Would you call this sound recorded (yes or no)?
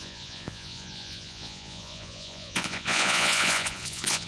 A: no